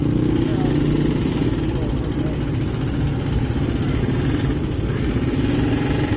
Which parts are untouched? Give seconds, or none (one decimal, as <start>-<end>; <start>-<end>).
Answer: 0.0-6.2